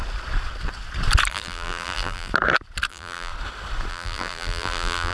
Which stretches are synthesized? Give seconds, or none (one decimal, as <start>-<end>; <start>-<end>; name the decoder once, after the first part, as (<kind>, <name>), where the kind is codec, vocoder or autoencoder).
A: 1.3-2.3 (vocoder, BigVGAN v2); 2.9-3.3; 3.9-5.1